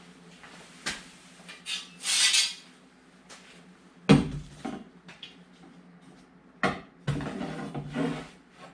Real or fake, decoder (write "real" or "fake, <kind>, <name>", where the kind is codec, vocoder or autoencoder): real